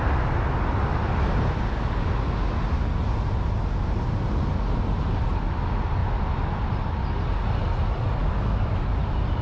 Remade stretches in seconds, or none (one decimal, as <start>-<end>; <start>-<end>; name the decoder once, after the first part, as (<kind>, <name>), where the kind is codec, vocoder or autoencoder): 8.2-9.0 (codec, DAC)